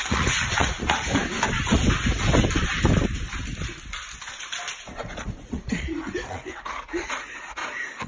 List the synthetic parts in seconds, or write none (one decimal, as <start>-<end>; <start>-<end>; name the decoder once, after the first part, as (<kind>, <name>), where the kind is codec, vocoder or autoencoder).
0.0-1.1 (vocoder, Vocos); 5.3-7.6